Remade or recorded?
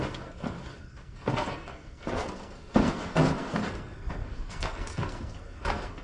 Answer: remade